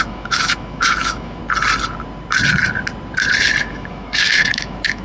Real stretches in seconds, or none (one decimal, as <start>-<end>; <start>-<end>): 1.4-3.6